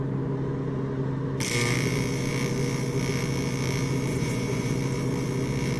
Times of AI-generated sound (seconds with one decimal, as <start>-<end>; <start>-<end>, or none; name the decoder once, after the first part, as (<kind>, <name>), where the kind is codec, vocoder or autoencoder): 4.1-4.7 (vocoder, Vocos)

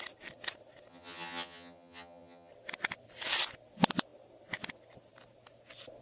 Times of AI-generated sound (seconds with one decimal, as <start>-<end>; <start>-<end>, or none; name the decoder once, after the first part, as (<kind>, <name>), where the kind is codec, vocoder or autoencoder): 0.9-2.5 (vocoder, HiFi-GAN)

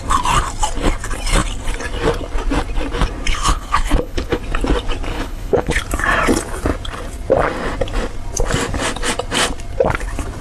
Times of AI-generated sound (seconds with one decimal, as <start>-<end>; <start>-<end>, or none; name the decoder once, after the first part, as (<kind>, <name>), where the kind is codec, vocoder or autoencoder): 3.3-4.4 (codec, HILCodec); 5.1-5.8

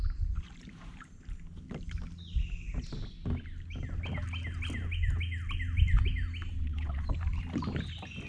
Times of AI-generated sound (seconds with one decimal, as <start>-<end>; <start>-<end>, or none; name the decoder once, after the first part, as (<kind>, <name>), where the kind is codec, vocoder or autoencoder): 6.5-7.1 (vocoder, WaveNeXt)

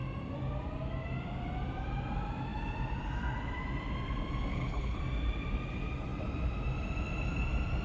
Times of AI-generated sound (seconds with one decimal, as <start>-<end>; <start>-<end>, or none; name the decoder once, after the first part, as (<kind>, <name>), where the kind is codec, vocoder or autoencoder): 4.5-5.0 (codec, HILCodec)

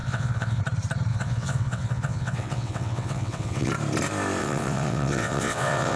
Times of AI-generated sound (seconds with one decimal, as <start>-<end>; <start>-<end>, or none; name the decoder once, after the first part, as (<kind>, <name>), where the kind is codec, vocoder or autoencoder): 0.0-0.6 (vocoder, WaveNeXt); 1.1-3.7; 4.4-6.0

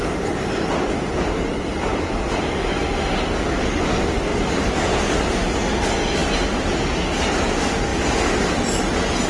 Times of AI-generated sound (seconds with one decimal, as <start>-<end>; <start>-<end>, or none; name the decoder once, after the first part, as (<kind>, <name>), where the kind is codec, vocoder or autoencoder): 4.3-5.0 (vocoder, BigVGAN v2)